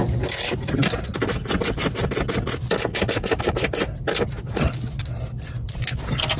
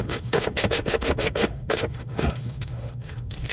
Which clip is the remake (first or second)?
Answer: second